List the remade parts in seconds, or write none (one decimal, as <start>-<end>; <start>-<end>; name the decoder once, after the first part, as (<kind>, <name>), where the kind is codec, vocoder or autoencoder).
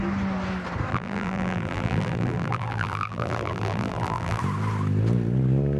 0.9-4.4 (vocoder, BigVGAN v2)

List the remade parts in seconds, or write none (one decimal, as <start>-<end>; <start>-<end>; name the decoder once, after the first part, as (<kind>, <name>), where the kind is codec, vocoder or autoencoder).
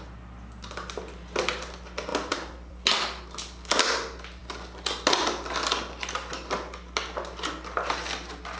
2.1-2.8 (vocoder, BigVGAN v2)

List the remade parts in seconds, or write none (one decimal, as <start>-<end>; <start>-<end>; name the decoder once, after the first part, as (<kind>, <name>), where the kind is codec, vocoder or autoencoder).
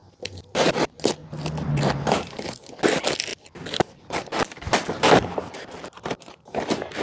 0.0-0.7 (vocoder, BigVGAN v2); 3.3-7.0